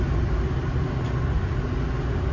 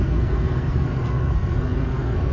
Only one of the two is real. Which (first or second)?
first